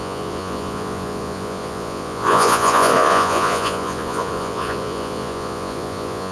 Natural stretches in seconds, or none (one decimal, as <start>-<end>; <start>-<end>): none